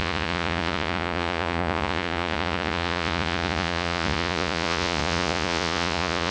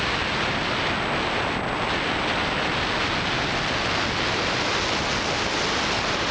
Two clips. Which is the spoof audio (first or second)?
first